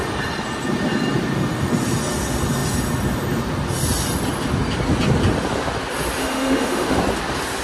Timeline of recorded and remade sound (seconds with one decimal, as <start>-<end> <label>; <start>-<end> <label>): 0.0-6.2 recorded; 6.2-7.0 remade; 7.0-7.6 recorded